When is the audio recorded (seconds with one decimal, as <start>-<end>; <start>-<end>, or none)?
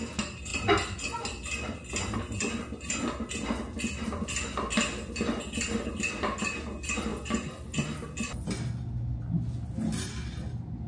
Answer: 0.0-10.9